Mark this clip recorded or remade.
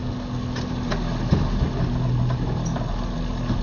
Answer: recorded